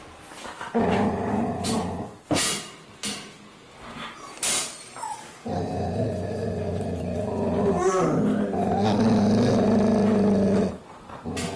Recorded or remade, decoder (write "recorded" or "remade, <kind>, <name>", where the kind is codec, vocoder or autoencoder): recorded